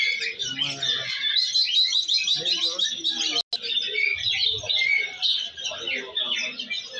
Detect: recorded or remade recorded